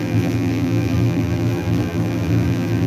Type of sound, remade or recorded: remade